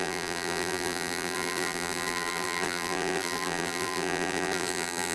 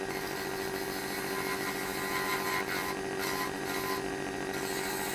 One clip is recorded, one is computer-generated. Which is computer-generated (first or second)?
first